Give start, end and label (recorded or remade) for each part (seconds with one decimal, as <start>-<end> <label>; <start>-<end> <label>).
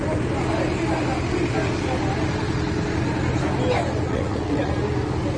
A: 0.0-4.1 recorded; 4.1-4.7 remade; 4.7-5.4 recorded